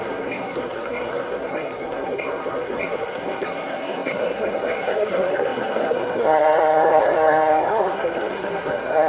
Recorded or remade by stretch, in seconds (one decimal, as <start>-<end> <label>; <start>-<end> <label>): 0.0-9.1 remade

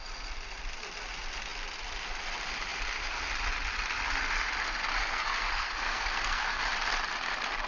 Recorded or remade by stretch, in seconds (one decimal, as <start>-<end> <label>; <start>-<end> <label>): 0.0-5.0 recorded; 5.0-6.6 remade; 6.6-7.7 recorded

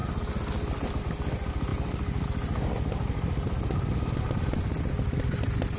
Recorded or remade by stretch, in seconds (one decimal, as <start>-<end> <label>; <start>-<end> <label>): 0.0-5.8 recorded

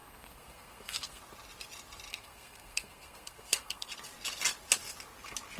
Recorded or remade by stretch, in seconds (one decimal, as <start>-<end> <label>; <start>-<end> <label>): 0.0-1.2 remade; 1.2-2.1 recorded; 2.1-3.9 remade; 3.9-5.6 recorded

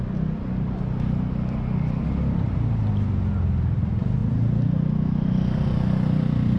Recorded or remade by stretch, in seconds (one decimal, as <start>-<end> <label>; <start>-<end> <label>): 0.0-6.6 recorded